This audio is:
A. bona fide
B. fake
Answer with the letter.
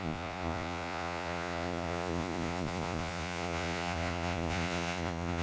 B